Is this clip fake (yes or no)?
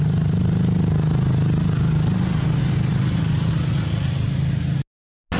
no